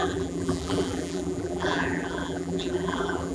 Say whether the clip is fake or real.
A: fake